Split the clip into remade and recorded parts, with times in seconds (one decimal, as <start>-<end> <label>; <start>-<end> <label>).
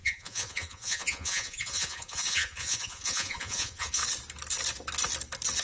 0.0-4.0 remade; 4.0-5.6 recorded